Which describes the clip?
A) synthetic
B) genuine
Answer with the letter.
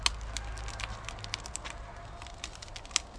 B